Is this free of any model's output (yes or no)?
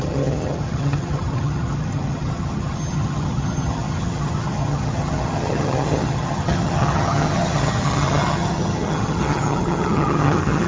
no